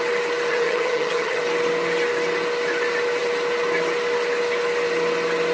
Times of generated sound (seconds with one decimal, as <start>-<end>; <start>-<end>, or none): 0.5-1.4